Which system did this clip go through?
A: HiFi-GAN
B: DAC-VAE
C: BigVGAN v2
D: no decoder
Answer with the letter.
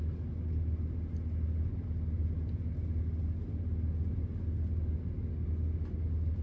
D